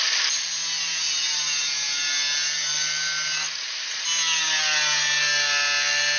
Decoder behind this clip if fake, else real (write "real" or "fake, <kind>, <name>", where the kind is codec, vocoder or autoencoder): real